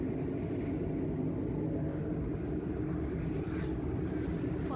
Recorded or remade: recorded